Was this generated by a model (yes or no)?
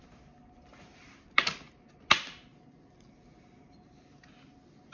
no